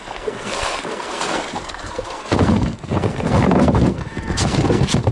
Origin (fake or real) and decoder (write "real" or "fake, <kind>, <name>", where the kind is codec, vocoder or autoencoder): fake, codec, SNAC